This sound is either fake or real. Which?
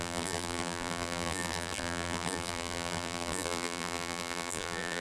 fake